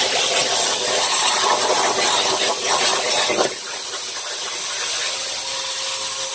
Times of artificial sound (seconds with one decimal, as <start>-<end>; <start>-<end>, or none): none

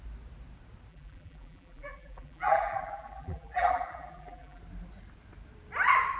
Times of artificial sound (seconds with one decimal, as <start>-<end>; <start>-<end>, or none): 0.9-4.6

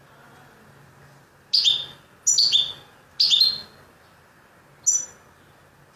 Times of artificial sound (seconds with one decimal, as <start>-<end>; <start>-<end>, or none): none

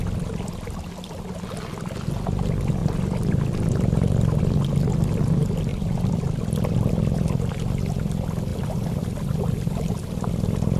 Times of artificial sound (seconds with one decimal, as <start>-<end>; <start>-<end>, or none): 5.7-6.9

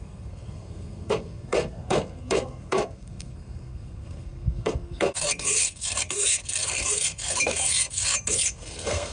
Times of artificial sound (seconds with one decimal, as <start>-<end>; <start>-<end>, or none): 0.0-9.1